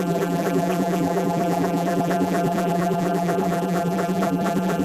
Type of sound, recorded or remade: remade